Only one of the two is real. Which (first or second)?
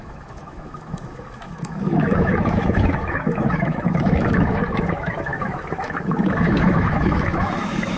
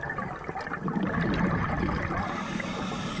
second